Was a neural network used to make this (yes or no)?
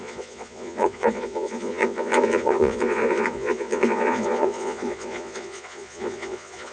yes